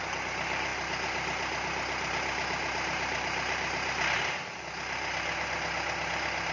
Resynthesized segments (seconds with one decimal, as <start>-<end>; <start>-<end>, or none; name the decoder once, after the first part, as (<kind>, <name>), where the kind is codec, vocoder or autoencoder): none